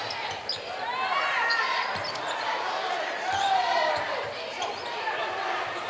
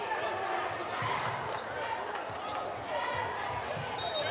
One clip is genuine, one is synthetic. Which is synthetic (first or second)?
first